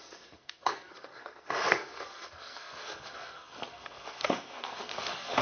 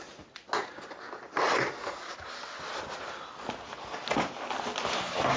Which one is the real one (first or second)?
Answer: second